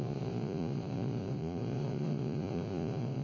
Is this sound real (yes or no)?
no